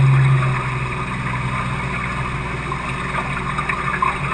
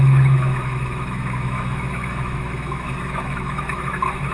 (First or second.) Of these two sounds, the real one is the first